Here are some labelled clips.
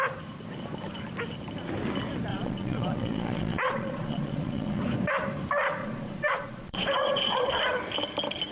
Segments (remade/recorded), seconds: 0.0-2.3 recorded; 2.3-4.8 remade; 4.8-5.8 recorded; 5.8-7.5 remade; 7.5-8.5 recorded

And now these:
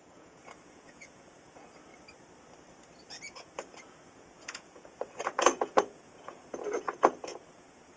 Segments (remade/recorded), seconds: 0.0-1.9 remade; 1.9-3.4 recorded; 3.4-8.0 remade

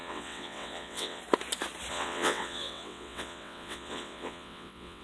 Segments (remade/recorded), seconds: 0.0-1.2 remade; 1.2-1.9 recorded; 1.9-5.0 remade